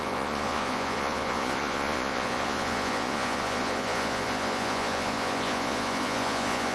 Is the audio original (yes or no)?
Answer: no